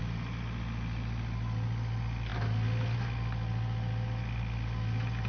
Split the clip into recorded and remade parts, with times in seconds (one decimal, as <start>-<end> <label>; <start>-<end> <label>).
0.0-5.3 recorded